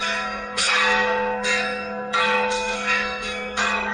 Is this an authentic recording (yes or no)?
no